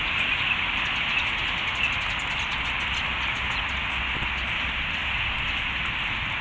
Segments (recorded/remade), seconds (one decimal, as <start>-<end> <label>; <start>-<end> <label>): 0.0-6.4 recorded